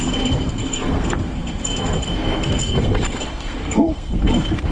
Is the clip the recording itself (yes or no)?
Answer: no